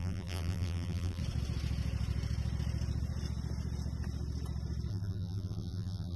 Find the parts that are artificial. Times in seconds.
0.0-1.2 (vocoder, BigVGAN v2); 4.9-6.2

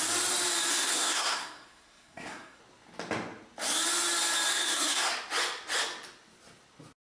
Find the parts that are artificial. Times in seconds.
0.7-2.6 (codec, SNAC); 4.5-5.1

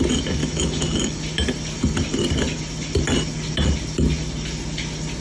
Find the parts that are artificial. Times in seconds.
0.4-1.2 (autoencoder, DAC-VAE)

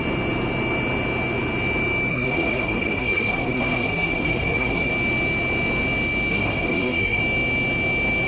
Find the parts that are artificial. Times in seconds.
2.1-4.9 (codec, SNAC); 6.3-7.2

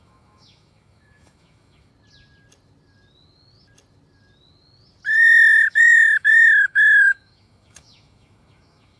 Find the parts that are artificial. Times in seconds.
0.0-1.9 (autoencoder, DAC-VAE); 5.5-9.0